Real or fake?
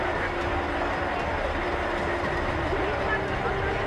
real